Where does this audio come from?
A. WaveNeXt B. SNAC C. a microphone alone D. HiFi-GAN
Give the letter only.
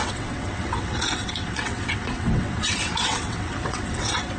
A